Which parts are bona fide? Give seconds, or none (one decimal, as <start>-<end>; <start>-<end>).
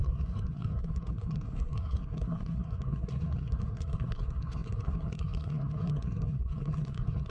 none